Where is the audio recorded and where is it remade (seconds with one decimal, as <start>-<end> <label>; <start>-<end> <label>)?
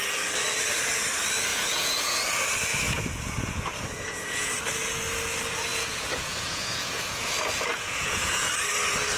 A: 0.0-1.5 recorded; 1.5-2.2 remade; 2.2-2.7 recorded; 2.7-4.5 remade; 4.5-5.7 recorded; 5.7-7.3 remade; 7.3-7.7 recorded; 7.7-8.5 remade; 8.5-9.2 recorded